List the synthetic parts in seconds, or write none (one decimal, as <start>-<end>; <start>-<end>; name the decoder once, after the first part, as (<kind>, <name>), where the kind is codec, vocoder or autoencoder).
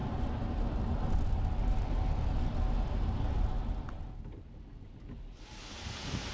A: none